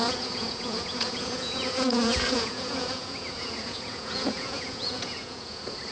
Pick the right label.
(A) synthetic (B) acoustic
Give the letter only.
A